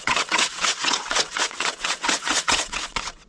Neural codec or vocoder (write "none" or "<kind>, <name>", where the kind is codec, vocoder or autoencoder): vocoder, WaveNeXt